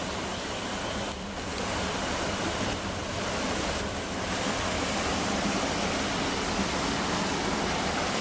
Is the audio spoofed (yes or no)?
no